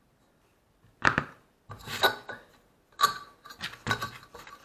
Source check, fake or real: real